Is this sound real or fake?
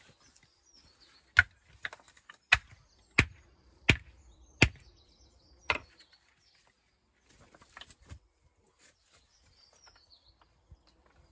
real